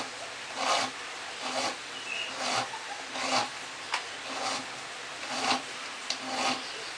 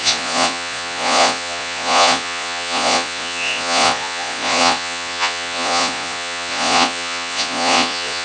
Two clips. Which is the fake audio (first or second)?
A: second